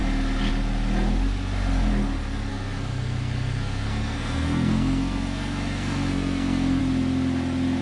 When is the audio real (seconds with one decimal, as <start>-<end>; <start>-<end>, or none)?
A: 0.0-2.5; 6.8-7.8